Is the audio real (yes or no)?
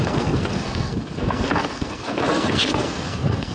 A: no